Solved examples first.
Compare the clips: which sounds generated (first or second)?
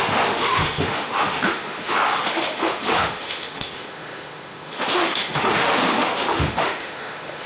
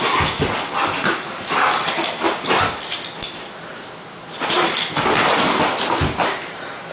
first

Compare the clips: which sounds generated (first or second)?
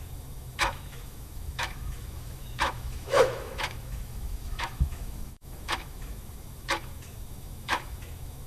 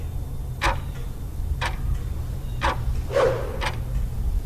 first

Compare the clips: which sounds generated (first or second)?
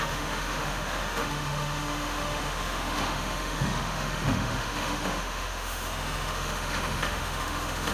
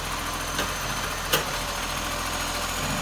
first